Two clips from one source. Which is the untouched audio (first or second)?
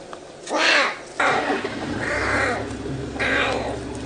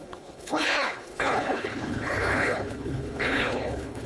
first